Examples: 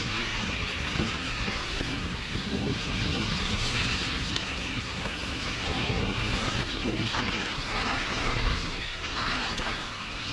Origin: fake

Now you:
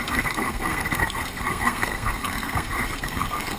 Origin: fake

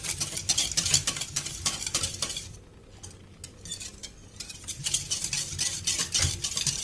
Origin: real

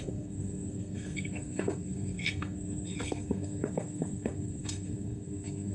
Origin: fake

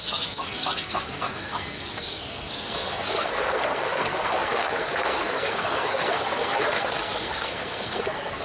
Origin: fake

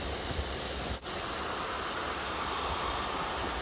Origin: real